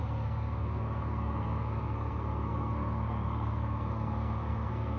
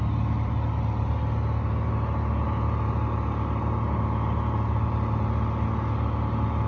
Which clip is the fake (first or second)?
first